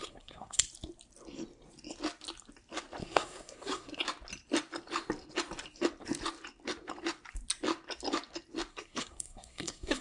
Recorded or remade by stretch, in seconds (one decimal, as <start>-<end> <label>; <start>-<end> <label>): 0.0-0.6 remade; 0.6-3.0 recorded; 3.0-4.0 remade; 4.0-8.7 recorded; 8.7-10.0 remade

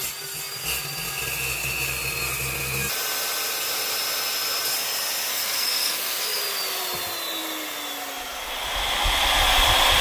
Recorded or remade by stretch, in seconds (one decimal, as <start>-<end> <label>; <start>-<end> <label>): 0.0-5.3 recorded; 5.3-6.4 remade; 6.4-10.0 recorded